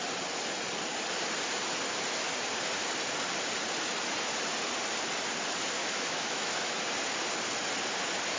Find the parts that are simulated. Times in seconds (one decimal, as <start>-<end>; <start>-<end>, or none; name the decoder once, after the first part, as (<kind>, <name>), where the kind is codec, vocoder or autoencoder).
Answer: 5.8-6.7 (autoencoder, DAC-VAE)